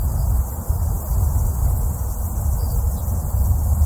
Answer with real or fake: real